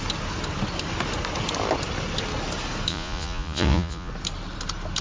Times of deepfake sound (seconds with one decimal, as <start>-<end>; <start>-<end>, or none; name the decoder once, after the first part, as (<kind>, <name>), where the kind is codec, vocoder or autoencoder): 2.9-4.1 (vocoder, Vocos)